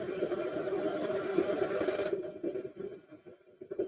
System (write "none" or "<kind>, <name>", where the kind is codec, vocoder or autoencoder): none